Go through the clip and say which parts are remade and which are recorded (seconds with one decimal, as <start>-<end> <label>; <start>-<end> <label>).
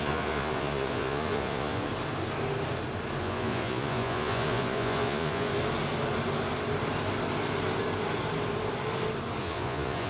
0.0-1.9 remade; 1.9-3.2 recorded; 3.2-5.5 remade; 5.5-9.4 recorded; 9.4-10.1 remade